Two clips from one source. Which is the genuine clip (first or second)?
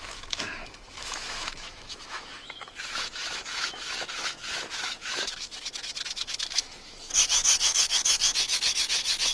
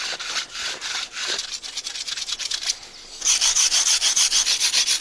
second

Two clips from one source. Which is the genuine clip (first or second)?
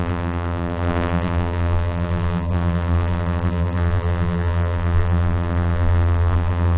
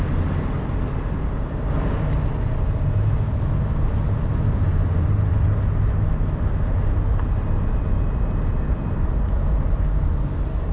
second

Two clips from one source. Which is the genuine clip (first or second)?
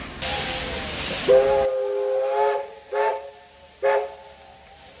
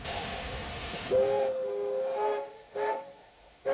first